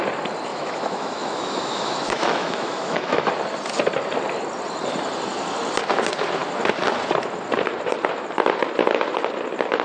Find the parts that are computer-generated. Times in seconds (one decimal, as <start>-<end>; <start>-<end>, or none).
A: 0.5-3.3